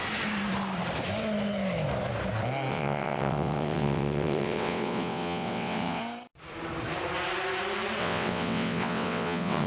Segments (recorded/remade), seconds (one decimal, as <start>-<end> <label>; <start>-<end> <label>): 0.0-2.7 recorded; 2.7-6.0 remade; 6.0-8.0 recorded; 8.0-9.7 remade